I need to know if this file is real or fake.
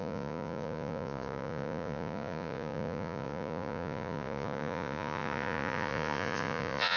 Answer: fake